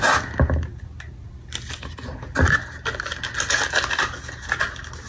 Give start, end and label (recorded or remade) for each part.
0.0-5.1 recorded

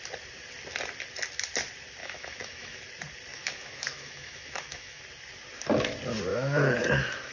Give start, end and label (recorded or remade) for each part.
0.0-2.0 recorded; 2.0-2.8 remade; 2.8-3.3 recorded; 3.3-5.0 remade; 5.0-6.3 recorded; 6.3-7.3 remade

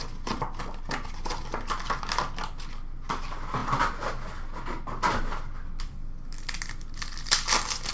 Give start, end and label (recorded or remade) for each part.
0.0-7.9 recorded

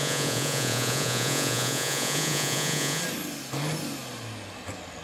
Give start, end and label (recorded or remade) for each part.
0.0-3.0 remade; 3.0-5.0 recorded